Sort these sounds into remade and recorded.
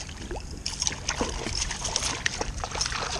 recorded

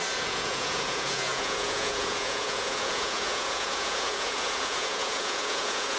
remade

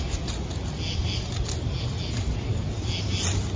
recorded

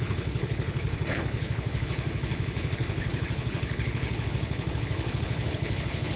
remade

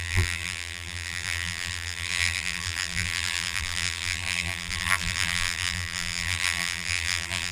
remade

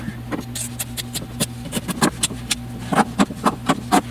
recorded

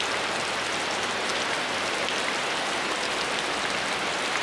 remade